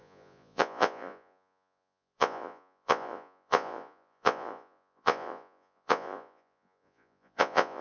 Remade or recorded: remade